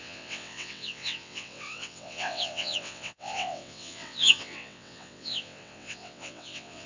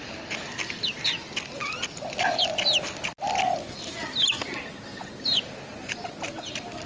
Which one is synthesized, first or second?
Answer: first